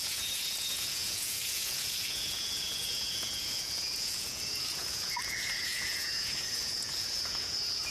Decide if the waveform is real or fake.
fake